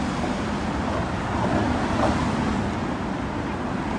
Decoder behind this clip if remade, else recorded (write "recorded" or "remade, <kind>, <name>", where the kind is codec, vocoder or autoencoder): recorded